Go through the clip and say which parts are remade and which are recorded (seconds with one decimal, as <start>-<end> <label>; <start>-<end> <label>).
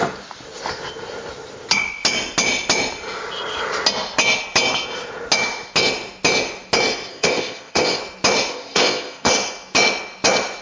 0.0-7.1 recorded; 7.1-8.0 remade; 8.0-8.5 recorded; 8.5-9.3 remade; 9.3-10.6 recorded